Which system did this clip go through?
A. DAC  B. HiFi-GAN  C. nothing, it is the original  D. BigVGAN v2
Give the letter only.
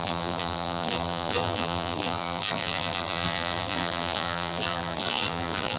D